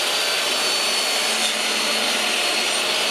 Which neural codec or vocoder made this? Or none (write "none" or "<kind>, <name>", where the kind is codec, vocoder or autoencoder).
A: none